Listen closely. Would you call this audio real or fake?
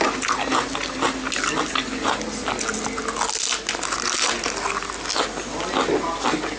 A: real